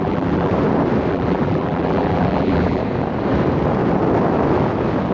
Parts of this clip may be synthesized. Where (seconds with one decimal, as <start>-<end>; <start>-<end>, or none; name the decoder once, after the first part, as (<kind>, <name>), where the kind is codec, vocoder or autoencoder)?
0.0-0.5 (vocoder, BigVGAN v2); 1.1-2.8